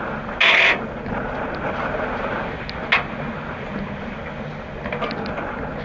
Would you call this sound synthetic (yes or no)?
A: no